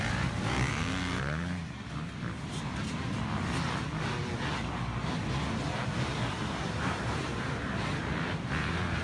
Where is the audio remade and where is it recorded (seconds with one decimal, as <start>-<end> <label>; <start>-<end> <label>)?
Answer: 0.0-1.6 remade; 1.6-6.3 recorded; 6.3-9.0 remade